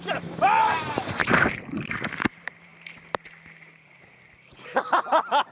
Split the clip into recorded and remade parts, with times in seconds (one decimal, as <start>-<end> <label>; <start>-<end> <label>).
0.0-1.2 remade; 1.2-1.9 recorded; 1.9-2.7 remade; 2.7-5.5 recorded